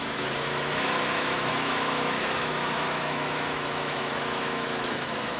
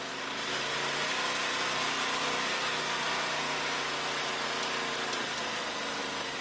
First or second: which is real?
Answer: second